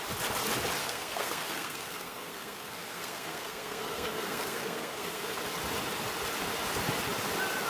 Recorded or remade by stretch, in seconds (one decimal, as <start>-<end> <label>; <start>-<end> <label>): 0.0-0.8 recorded; 0.8-5.4 remade; 5.4-7.7 recorded